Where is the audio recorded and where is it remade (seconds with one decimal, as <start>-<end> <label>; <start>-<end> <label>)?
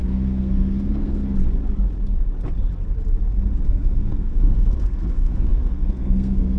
0.0-1.2 remade; 1.2-3.7 recorded; 3.7-6.6 remade